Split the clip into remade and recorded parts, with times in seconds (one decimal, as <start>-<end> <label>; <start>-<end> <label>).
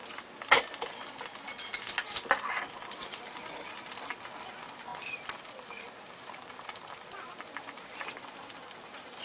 0.0-9.2 recorded